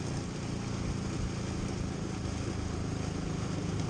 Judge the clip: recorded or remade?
recorded